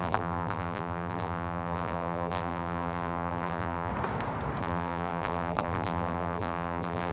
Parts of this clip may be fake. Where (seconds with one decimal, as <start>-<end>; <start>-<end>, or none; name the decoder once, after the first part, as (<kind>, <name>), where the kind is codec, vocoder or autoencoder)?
0.0-3.9 (vocoder, BigVGAN v2); 4.6-7.1